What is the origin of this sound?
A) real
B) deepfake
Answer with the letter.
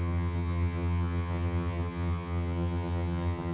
B